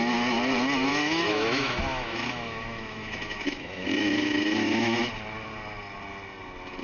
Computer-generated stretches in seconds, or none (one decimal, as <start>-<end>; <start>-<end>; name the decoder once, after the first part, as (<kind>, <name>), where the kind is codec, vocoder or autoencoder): 0.9-5.0 (autoencoder, DAC-VAE)